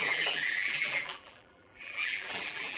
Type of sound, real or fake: fake